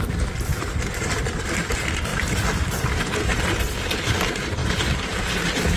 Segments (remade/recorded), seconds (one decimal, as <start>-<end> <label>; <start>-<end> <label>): 0.0-0.5 recorded; 0.5-1.4 remade; 1.4-2.1 recorded; 2.1-2.8 remade; 2.8-4.6 recorded; 4.6-5.3 remade; 5.3-5.8 recorded